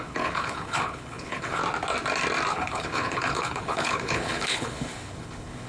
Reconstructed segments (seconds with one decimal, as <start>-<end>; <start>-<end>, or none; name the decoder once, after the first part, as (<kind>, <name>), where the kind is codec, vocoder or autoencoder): 0.0-1.6 (codec, HILCodec); 2.5-5.7